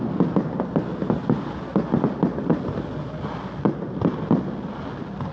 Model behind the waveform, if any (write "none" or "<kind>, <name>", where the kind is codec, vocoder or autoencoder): none